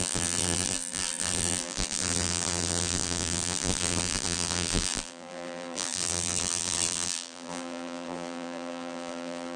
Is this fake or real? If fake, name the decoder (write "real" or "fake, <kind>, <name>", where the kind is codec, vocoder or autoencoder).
fake, vocoder, BigVGAN v2